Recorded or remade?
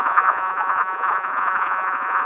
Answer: remade